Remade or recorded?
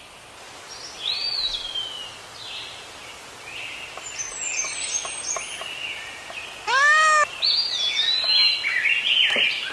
recorded